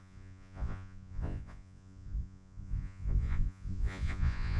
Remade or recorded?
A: remade